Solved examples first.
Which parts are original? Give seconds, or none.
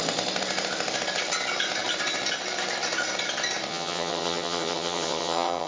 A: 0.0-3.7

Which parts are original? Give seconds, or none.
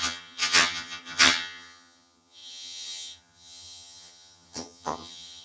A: none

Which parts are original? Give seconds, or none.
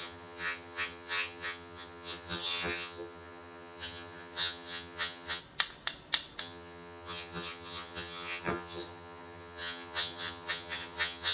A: 5.4-6.4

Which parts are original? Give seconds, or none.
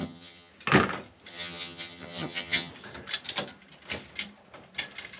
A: 0.5-1.3; 2.7-5.2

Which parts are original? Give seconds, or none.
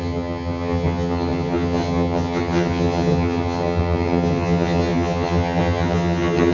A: none